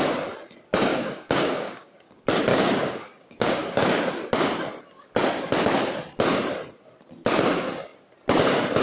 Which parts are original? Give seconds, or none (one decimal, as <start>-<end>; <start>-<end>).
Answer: 0.0-0.9; 2.1-2.5; 4.0-8.8

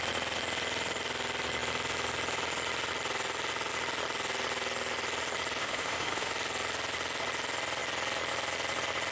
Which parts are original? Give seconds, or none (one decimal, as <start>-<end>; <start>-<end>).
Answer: 0.0-5.6; 6.3-9.1